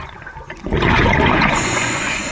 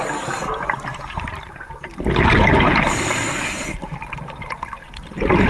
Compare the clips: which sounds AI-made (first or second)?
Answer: first